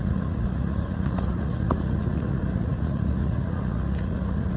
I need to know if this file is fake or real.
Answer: fake